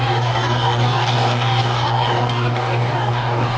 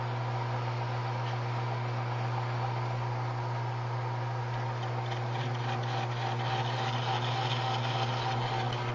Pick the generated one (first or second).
first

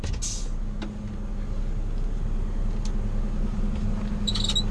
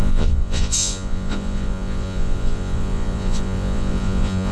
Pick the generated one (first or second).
second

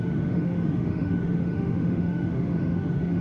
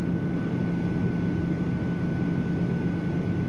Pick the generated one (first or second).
first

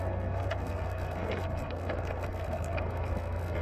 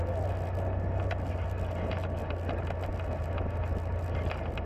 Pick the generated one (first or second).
first